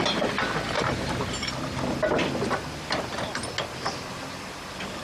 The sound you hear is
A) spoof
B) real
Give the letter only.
B